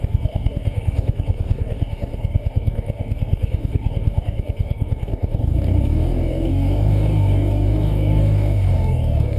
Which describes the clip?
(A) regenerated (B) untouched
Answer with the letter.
A